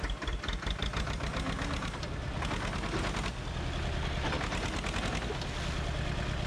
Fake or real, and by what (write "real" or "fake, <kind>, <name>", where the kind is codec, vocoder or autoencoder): real